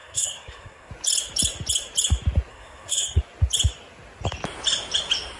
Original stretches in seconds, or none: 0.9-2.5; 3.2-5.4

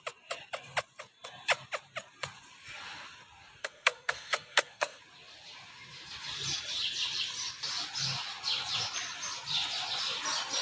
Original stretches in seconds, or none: 0.0-3.6; 5.0-10.6

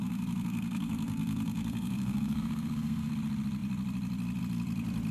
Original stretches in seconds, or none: 3.1-5.1

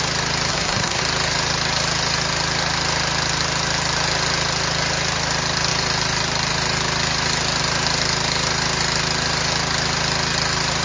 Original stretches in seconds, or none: 0.0-0.5; 1.0-10.8

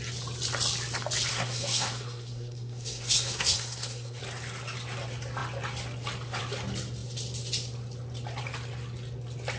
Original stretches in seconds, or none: 0.0-1.3; 4.2-9.6

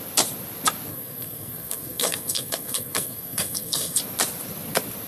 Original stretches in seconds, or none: 0.0-0.9; 4.0-5.1